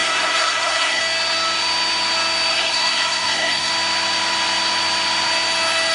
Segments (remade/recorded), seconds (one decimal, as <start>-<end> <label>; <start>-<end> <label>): 0.0-1.0 remade; 1.0-2.5 recorded; 2.5-3.7 remade; 3.7-5.9 recorded